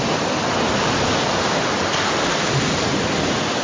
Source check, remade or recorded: recorded